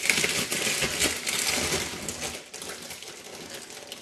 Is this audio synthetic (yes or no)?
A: no